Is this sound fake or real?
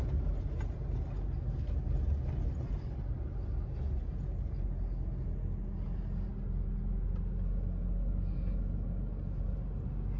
real